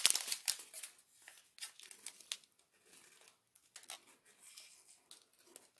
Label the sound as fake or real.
real